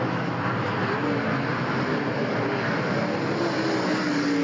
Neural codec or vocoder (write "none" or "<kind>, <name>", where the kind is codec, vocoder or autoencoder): none